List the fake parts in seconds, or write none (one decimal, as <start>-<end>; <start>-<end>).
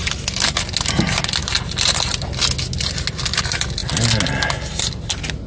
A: none